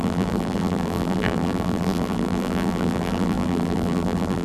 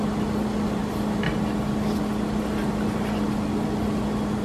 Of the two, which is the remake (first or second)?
first